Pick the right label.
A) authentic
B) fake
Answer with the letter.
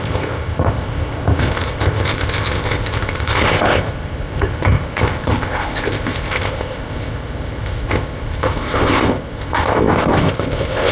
B